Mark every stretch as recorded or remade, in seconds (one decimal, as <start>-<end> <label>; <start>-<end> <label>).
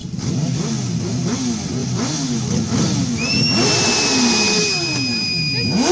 0.0-5.9 recorded